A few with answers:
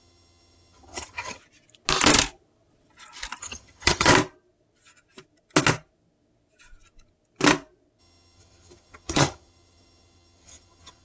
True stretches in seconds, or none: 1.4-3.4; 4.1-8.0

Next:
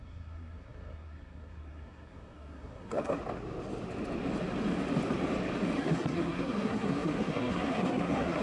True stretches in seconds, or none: 3.2-5.8

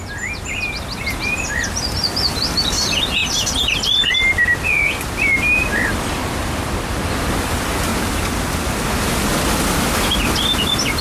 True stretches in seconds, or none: 0.0-11.0

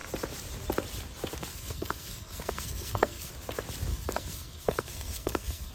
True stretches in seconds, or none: 0.0-1.5; 3.3-3.9